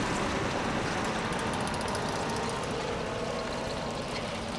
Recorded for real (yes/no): yes